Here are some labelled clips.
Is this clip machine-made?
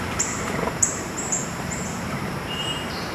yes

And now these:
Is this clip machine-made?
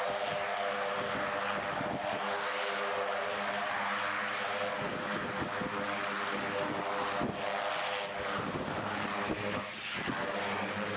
no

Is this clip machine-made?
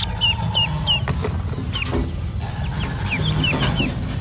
no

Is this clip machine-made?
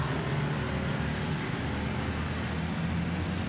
no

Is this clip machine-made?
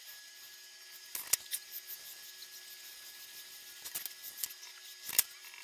no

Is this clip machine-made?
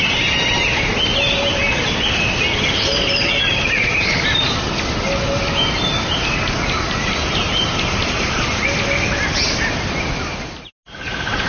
no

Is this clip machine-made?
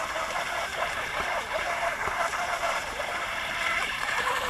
yes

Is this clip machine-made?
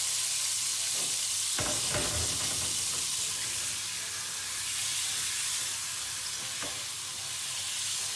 no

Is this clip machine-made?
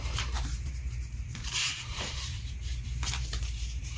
yes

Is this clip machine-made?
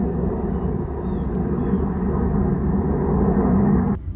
no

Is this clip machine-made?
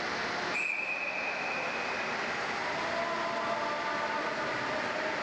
no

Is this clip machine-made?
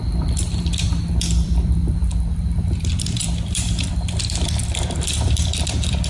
yes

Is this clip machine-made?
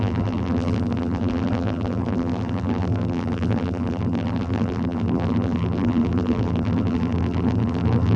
yes